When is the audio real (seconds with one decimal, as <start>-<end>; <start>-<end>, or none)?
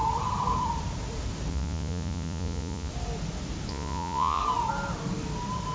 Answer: 0.0-1.5; 2.9-3.7; 4.4-5.7